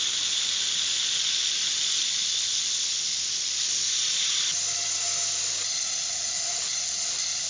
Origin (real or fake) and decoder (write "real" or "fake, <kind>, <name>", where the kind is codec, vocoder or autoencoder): real